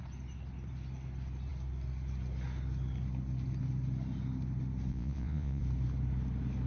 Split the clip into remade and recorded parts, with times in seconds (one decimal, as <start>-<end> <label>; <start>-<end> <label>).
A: 0.0-4.9 recorded; 4.9-5.6 remade; 5.6-6.7 recorded